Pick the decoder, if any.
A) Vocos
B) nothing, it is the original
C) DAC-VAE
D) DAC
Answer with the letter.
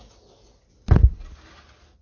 B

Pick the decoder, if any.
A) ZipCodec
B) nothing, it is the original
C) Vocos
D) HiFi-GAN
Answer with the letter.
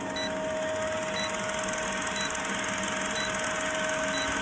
B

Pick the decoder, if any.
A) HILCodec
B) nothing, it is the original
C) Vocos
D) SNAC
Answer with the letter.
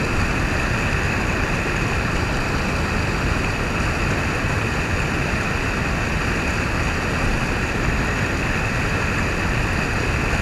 B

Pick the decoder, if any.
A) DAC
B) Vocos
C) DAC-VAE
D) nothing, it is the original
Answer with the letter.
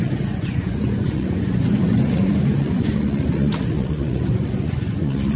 B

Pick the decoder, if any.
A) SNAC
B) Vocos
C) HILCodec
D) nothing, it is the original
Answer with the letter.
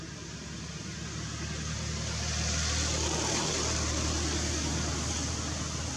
D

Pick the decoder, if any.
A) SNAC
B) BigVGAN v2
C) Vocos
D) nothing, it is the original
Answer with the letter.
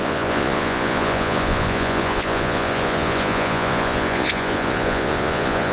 C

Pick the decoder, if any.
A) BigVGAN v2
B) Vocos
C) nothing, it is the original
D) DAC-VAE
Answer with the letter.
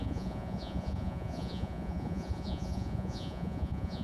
B